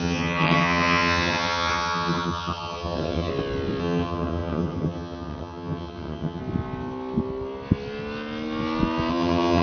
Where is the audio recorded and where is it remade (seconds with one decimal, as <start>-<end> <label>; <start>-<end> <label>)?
0.0-3.3 remade; 3.3-3.8 recorded; 3.8-6.4 remade; 6.4-9.1 recorded; 9.1-9.6 remade